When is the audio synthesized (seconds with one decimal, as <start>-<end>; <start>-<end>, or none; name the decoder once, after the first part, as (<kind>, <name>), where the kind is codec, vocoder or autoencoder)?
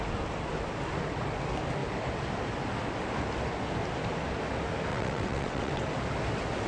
4.9-5.8 (vocoder, WaveNeXt)